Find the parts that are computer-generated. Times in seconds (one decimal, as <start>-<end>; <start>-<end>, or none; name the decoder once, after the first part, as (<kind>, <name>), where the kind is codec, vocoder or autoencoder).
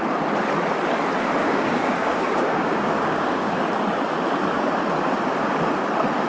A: 1.4-3.6 (codec, DAC)